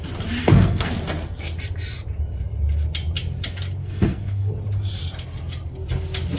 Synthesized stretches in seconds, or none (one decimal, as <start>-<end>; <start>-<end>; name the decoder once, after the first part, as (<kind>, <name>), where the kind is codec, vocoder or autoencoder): 0.4-0.9 (codec, SNAC); 3.8-4.5

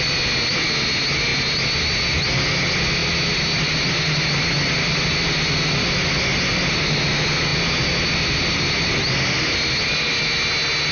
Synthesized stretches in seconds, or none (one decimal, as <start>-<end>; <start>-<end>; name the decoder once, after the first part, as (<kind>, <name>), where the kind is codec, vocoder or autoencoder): none

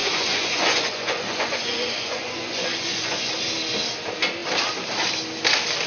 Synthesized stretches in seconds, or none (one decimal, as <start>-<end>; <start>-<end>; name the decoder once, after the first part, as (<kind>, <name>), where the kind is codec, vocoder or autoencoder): 0.0-3.3 (vocoder, Vocos)